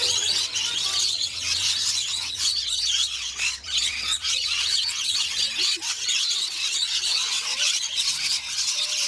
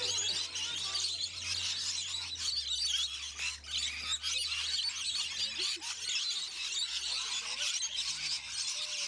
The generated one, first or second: first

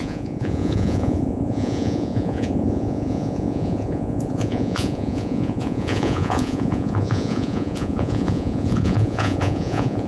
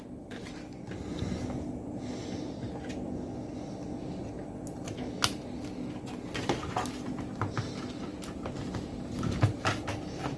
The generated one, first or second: first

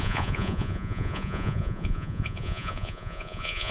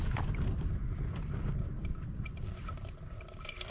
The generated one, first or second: first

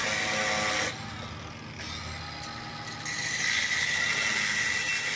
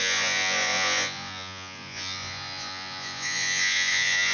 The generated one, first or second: second